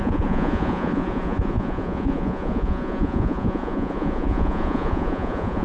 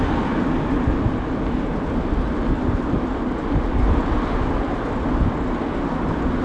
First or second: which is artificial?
first